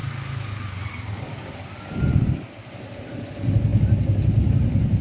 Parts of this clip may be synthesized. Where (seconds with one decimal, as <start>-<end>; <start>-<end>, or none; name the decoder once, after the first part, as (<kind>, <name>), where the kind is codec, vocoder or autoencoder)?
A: none